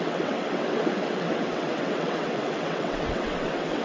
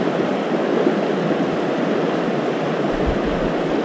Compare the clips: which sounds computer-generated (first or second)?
first